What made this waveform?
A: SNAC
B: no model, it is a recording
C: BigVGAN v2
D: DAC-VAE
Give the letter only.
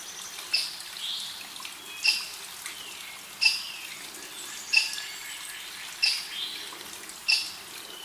B